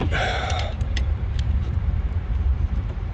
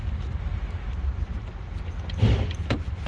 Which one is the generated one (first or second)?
first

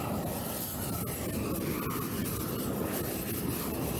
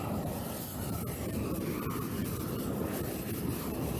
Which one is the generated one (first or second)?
second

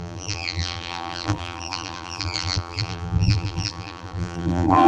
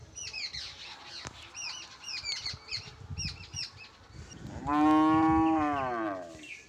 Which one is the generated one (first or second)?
first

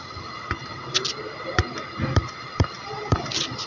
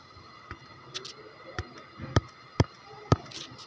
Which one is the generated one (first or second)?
first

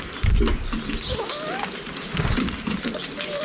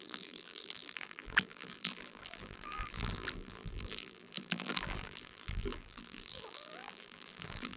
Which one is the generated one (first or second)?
second